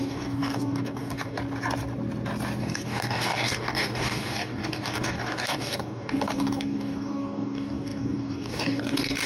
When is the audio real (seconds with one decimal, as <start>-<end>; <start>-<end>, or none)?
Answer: 1.4-2.6